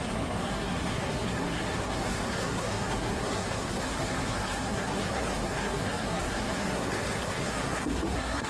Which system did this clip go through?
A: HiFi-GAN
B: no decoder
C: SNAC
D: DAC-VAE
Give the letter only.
C